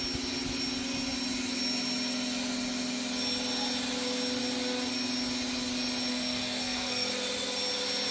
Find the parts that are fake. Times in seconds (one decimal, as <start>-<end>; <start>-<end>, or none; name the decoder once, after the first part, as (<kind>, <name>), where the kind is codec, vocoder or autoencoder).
6.1-7.1 (codec, SNAC)